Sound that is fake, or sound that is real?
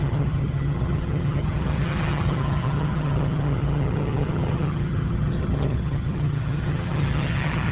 fake